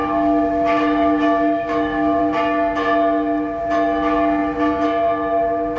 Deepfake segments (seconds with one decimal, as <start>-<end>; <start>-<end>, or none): 0.0-2.2